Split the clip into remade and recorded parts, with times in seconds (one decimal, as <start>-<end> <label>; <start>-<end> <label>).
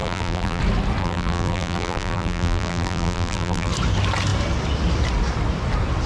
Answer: 0.0-0.6 remade; 0.6-1.0 recorded; 1.0-3.7 remade; 3.7-6.1 recorded